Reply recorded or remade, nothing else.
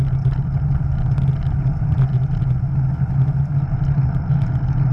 recorded